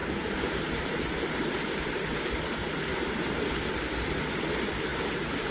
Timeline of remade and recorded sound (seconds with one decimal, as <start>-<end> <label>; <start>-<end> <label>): 0.0-1.8 remade; 1.8-2.9 recorded; 2.9-3.5 remade; 3.5-4.9 recorded; 4.9-5.5 remade